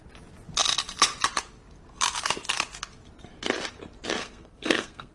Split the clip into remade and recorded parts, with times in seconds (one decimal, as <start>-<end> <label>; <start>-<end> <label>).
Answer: 0.0-4.2 recorded; 4.2-5.1 remade